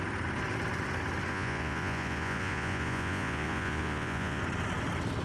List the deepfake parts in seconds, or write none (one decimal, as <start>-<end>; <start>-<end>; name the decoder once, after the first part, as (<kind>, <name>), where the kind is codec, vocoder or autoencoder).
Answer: 1.3-4.4 (vocoder, Vocos)